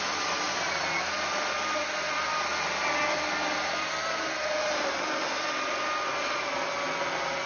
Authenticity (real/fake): real